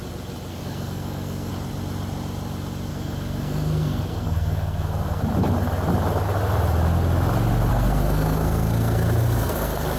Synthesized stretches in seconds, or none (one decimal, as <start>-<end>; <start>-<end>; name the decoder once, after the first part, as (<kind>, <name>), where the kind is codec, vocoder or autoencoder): 0.5-1.5 (codec, SNAC); 2.9-5.2; 7.7-10.0